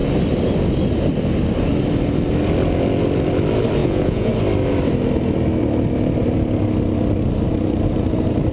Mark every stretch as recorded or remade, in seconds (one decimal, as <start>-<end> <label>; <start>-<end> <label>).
0.0-3.8 recorded; 3.8-4.3 remade; 4.3-8.5 recorded

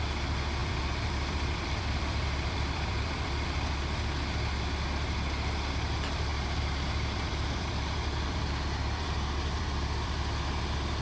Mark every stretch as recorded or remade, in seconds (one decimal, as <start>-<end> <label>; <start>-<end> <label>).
0.0-0.6 recorded; 0.6-3.7 remade; 3.7-6.3 recorded; 6.3-10.1 remade; 10.1-11.0 recorded

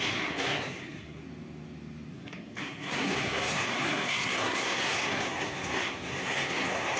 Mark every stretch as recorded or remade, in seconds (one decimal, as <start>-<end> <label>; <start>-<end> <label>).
0.0-1.2 remade; 1.2-2.1 recorded; 2.1-7.0 remade

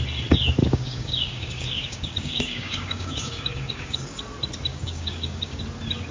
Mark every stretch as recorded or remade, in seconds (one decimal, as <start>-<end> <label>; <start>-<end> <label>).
0.0-0.6 recorded; 0.6-4.2 remade; 4.2-4.7 recorded; 4.7-5.6 remade; 5.6-6.1 recorded

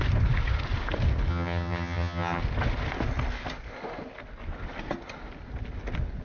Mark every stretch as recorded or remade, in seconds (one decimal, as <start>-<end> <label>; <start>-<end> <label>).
0.0-1.3 recorded; 1.3-2.4 remade; 2.4-6.2 recorded